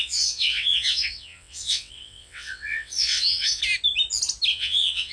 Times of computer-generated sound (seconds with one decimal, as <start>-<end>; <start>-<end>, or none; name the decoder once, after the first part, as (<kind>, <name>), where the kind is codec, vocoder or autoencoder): 0.0-3.6 (vocoder, WaveNeXt); 4.5-5.1